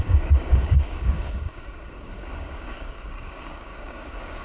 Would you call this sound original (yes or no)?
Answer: no